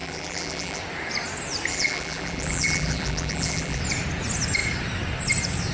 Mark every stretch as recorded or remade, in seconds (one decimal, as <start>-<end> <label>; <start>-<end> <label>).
0.0-0.8 remade; 0.8-1.7 recorded; 1.7-3.8 remade; 3.8-5.7 recorded

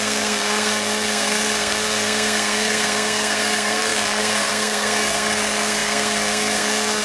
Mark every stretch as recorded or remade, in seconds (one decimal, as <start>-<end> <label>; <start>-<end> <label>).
0.0-7.0 remade

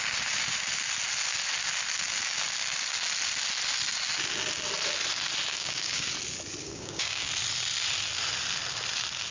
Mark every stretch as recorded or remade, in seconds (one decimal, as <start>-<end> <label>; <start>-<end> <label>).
0.0-5.5 recorded; 5.5-6.1 remade; 6.1-6.6 recorded; 6.6-7.3 remade; 7.3-9.3 recorded

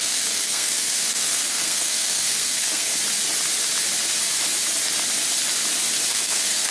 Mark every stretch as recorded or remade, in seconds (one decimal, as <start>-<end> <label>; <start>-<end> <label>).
0.0-2.9 remade; 2.9-6.1 recorded; 6.1-6.7 remade

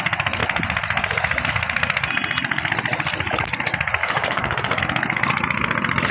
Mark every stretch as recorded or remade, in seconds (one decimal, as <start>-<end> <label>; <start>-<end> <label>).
0.0-4.0 recorded; 4.0-4.8 remade; 4.8-6.1 recorded

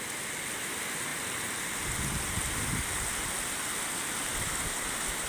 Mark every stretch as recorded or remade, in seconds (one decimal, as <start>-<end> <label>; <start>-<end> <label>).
0.0-5.3 recorded

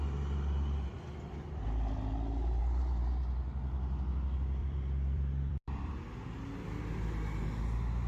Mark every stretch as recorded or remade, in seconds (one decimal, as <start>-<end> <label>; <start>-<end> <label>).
0.0-0.9 recorded; 0.9-2.6 remade; 2.6-4.6 recorded; 4.6-5.9 remade; 5.9-8.1 recorded